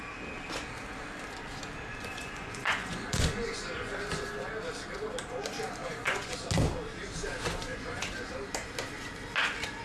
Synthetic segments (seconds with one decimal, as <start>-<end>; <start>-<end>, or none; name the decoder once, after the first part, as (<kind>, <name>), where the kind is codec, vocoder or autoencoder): 1.9-4.5 (vocoder, Vocos); 5.8-6.4; 7.7-8.3